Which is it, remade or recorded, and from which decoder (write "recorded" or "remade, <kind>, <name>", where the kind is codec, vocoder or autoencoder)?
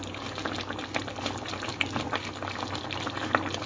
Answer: remade, vocoder, BigVGAN v2